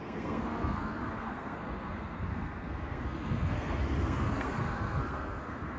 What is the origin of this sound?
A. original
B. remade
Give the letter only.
B